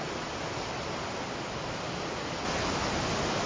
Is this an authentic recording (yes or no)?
yes